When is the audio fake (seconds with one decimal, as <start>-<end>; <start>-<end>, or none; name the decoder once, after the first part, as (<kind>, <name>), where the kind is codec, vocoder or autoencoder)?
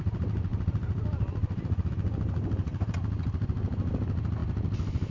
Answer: 0.5-1.9 (vocoder, BigVGAN v2)